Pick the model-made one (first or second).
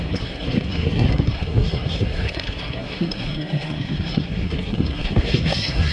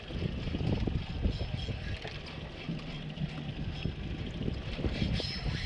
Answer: first